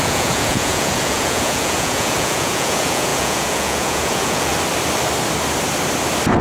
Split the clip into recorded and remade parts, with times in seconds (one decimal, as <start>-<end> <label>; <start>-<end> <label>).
0.0-4.5 remade; 4.5-6.4 recorded